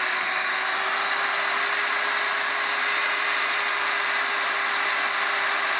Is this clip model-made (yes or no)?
no